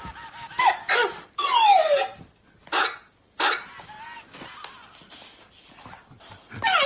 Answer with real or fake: real